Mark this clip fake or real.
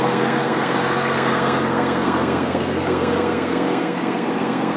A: fake